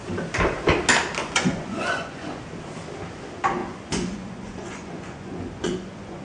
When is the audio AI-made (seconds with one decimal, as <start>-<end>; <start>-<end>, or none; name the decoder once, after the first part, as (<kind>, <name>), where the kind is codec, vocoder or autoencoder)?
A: 1.2-2.4 (vocoder, Vocos); 3.6-6.2